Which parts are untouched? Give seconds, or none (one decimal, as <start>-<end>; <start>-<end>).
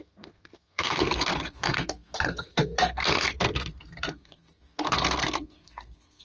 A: none